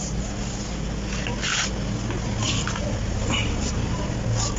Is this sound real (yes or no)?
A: yes